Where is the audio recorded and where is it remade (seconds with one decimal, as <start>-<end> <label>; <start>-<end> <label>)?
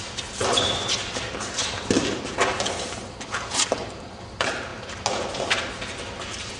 0.0-0.4 recorded; 0.4-1.3 remade; 1.3-6.6 recorded